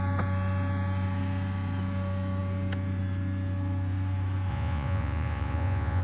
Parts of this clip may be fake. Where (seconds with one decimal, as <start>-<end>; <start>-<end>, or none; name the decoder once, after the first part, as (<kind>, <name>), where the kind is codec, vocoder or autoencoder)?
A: 4.5-6.0 (vocoder, Vocos)